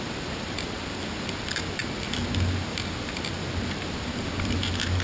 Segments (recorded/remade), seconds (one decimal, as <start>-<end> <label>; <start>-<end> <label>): 0.0-5.0 recorded